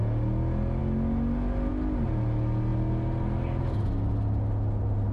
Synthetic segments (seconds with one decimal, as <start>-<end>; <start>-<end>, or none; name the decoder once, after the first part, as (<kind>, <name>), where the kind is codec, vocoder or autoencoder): none